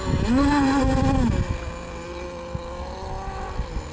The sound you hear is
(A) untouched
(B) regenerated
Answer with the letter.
A